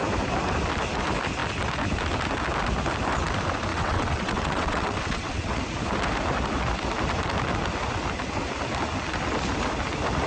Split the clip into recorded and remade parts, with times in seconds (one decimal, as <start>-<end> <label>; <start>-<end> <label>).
0.0-3.7 recorded; 3.7-5.6 remade; 5.6-10.3 recorded